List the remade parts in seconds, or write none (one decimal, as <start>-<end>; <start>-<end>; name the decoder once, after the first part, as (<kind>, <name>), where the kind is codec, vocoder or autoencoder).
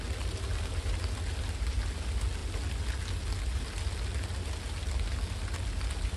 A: none